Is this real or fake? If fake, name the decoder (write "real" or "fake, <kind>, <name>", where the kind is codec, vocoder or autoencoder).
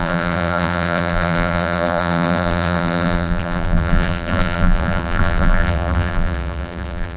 fake, vocoder, BigVGAN v2